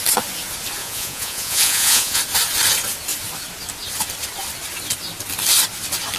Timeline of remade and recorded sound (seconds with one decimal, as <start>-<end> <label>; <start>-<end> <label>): 0.0-0.8 recorded; 0.8-2.2 remade; 2.2-6.2 recorded